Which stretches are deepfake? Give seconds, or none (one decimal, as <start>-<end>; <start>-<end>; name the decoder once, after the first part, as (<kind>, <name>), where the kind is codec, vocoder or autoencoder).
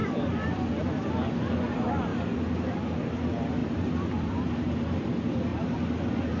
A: 0.0-1.1 (vocoder, BigVGAN v2); 3.6-4.5